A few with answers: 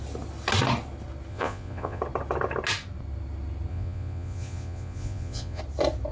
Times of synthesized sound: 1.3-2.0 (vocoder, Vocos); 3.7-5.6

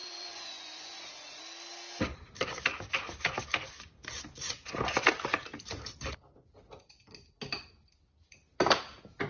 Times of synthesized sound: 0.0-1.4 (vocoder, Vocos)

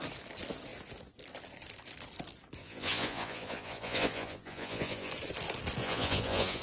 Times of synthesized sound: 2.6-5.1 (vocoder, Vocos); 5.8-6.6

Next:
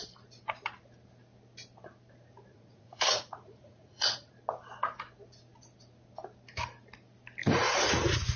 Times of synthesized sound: 2.5-4.3 (vocoder, Vocos); 7.4-7.9